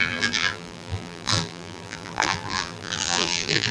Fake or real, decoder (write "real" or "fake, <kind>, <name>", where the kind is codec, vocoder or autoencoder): fake, vocoder, BigVGAN v2